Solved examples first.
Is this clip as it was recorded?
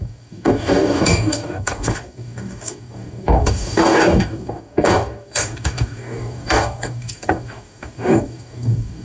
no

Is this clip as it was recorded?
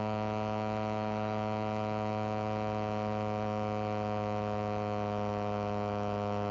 no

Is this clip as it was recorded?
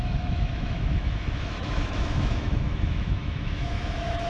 no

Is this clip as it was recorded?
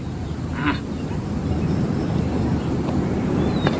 no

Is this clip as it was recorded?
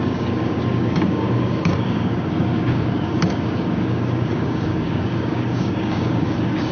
no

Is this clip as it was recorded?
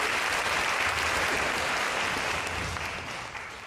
yes